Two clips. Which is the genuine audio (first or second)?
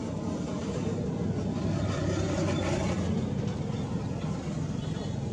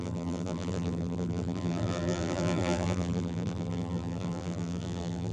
first